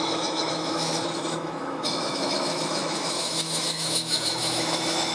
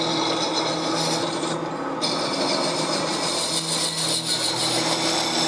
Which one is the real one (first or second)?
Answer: second